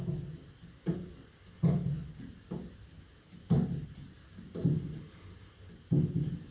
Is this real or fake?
real